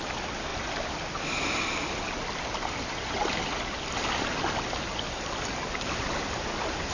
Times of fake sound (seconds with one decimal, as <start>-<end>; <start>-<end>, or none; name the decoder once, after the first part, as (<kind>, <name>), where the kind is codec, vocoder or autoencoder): none